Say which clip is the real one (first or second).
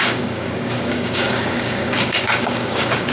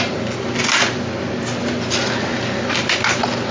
second